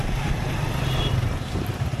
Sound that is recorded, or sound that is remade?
remade